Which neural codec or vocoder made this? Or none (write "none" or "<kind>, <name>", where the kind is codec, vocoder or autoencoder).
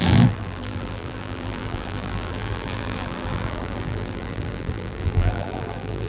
vocoder, BigVGAN v2